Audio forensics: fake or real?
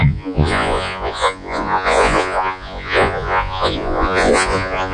fake